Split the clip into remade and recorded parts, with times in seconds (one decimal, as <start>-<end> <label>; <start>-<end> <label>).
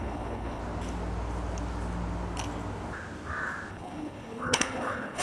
0.0-0.6 remade; 0.6-3.7 recorded; 3.7-5.2 remade